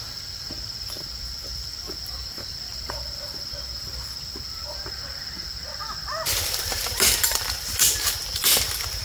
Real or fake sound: fake